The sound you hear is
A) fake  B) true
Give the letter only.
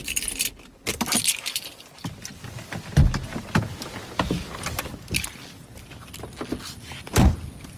B